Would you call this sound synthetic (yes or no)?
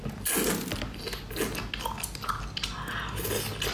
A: no